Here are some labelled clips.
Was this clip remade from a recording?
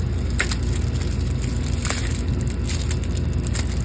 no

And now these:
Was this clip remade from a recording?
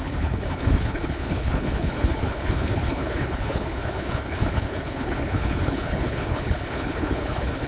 yes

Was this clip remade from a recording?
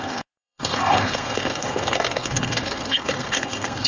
yes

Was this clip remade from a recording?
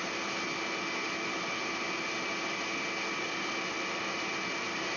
no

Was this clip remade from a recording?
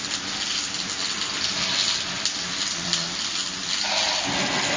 no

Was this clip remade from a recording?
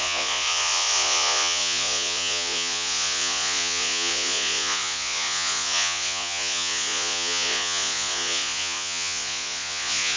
yes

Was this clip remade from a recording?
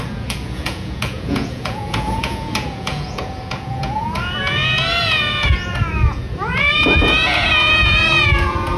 yes